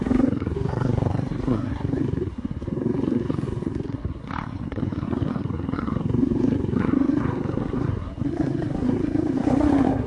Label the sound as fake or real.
fake